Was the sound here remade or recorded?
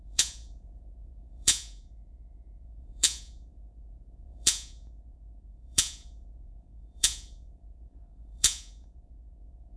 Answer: remade